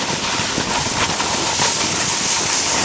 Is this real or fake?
real